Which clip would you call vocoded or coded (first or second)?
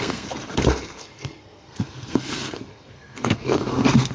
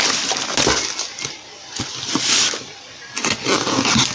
first